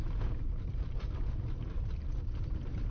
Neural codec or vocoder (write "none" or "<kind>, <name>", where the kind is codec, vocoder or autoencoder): none